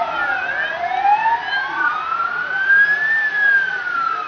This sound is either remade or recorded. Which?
recorded